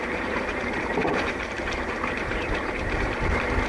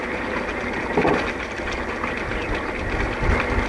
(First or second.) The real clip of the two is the second